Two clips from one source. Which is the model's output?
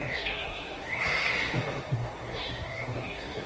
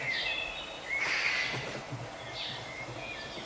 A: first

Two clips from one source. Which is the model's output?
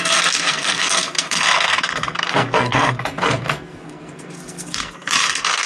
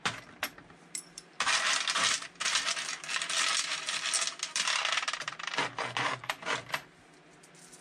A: first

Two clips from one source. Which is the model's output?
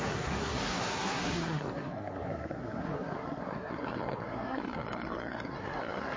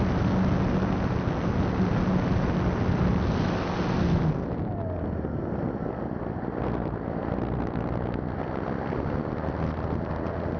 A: first